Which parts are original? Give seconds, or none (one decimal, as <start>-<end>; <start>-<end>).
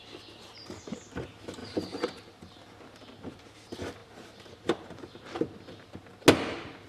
0.0-1.6; 2.8-6.9